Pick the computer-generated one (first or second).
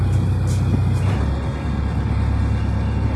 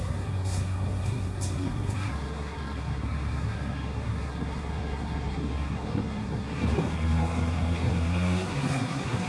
second